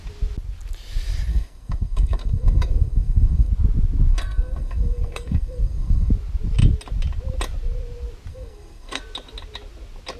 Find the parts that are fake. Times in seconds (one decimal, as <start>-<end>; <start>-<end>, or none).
1.3-3.5; 4.1-6.1; 8.3-9.0